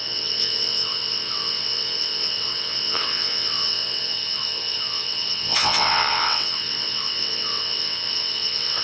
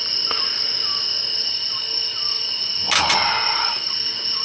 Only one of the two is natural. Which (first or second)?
second